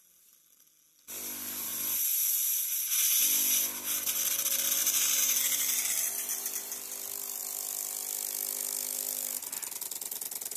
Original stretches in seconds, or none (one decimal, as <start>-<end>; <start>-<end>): 0.0-10.6